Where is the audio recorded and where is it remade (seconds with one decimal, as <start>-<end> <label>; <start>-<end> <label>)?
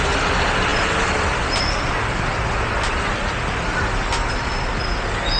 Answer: 0.0-5.4 recorded